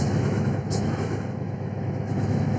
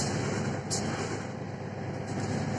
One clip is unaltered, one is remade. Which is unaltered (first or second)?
second